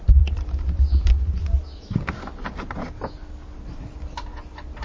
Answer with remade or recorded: recorded